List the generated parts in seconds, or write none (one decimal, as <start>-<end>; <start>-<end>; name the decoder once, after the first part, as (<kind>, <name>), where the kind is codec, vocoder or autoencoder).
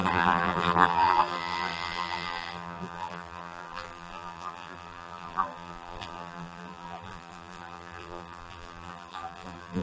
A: 0.0-9.8 (vocoder, BigVGAN v2)